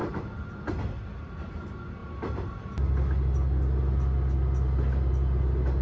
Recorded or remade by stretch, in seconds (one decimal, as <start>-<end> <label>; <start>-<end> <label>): 0.0-5.8 recorded